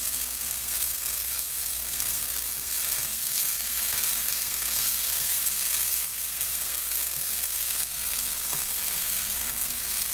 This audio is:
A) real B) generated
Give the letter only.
B